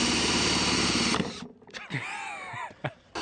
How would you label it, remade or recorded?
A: recorded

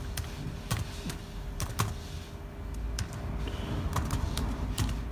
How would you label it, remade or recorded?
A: recorded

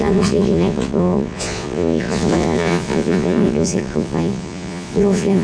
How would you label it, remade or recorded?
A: remade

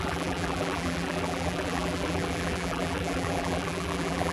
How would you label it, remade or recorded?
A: remade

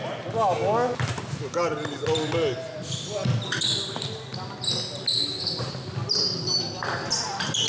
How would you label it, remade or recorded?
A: recorded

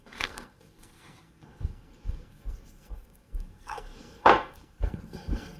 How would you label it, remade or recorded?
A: remade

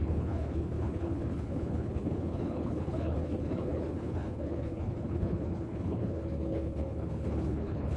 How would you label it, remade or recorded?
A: remade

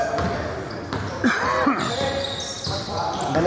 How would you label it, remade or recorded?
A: recorded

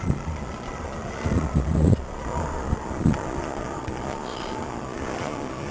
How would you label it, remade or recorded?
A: remade